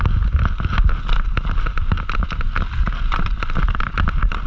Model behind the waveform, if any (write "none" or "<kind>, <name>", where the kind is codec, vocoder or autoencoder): none